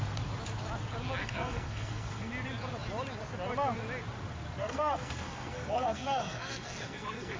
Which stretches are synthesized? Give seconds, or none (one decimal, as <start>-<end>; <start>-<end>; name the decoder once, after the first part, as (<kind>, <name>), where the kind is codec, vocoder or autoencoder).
1.2-2.3 (codec, SNAC); 4.6-7.4

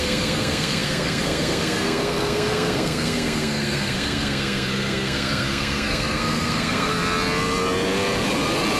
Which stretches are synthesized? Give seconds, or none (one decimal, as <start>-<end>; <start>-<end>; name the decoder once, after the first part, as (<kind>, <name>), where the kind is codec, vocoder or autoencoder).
0.0-6.9 (codec, SNAC)

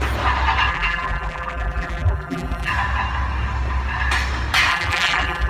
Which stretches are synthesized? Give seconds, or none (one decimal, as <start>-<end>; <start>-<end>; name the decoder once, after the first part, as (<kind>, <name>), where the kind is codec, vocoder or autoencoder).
0.7-2.7 (vocoder, BigVGAN v2); 4.7-5.5

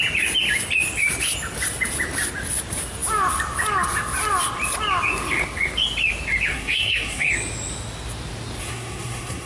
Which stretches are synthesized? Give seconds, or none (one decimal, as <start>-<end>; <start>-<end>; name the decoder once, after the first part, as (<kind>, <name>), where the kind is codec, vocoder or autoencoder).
6.5-7.3 (codec, SNAC); 8.6-9.5

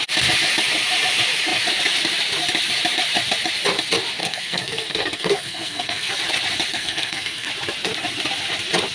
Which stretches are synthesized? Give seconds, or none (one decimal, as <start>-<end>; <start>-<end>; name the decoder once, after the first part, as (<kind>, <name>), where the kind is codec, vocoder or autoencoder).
4.2-6.1 (codec, SNAC); 6.7-7.5

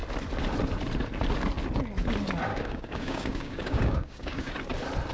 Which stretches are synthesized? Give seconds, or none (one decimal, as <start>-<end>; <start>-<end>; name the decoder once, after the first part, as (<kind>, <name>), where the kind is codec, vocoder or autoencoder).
2.5-4.5 (codec, DAC)

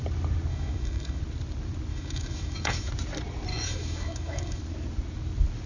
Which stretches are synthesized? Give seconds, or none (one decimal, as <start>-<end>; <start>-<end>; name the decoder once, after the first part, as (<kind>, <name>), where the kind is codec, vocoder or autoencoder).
0.5-1.2 (autoencoder, DAC-VAE); 1.9-2.9; 3.5-4.6

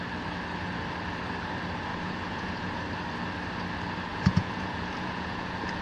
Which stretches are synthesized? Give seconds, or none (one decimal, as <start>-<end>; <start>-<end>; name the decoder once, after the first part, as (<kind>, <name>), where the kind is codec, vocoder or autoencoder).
1.9-2.8 (vocoder, Vocos); 4.1-5.8